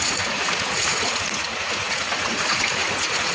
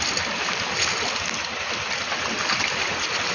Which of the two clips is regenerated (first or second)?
first